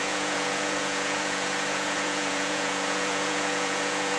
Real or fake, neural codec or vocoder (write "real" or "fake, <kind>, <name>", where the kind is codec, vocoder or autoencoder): fake, vocoder, Vocos